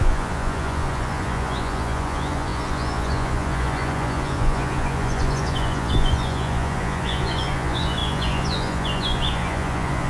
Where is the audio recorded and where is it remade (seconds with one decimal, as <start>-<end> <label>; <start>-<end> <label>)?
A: 0.0-10.1 remade